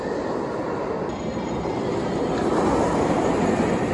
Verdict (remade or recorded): recorded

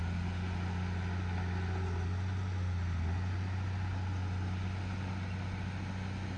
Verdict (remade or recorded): recorded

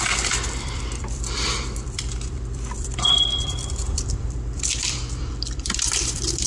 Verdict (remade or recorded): remade